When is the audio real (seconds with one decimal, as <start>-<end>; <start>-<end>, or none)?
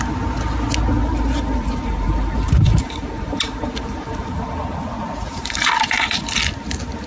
0.0-1.1; 4.8-5.4; 6.2-7.1